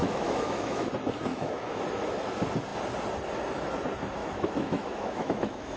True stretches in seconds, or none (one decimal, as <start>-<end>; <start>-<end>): 0.9-1.3; 1.8-4.2